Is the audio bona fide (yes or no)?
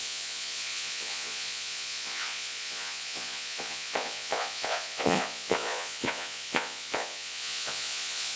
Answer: no